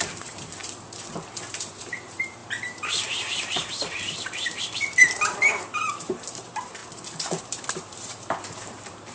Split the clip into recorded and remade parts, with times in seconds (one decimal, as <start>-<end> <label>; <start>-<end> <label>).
0.0-0.6 remade; 0.6-1.5 recorded; 1.5-6.8 remade; 6.8-7.4 recorded; 7.4-9.1 remade